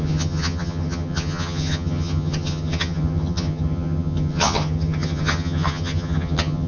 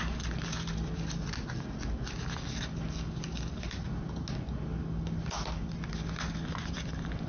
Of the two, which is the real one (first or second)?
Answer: second